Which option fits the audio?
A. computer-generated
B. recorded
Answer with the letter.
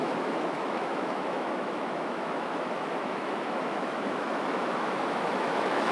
A